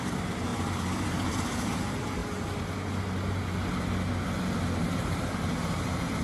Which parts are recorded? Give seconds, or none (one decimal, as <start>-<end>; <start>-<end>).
2.2-4.8